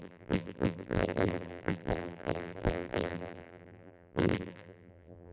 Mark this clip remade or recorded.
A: remade